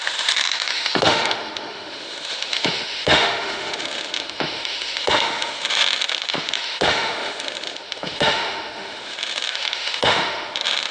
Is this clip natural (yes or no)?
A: no